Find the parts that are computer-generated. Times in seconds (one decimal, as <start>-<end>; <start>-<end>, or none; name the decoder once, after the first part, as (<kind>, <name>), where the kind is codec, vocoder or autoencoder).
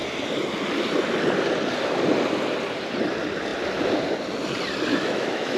4.9-5.6 (autoencoder, DAC-VAE)